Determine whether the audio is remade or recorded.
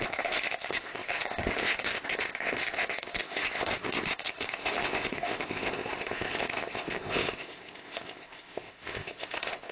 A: remade